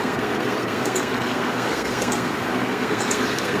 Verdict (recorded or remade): remade